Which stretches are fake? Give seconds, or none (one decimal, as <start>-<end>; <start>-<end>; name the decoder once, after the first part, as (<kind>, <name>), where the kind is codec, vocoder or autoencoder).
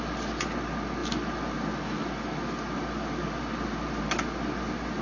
none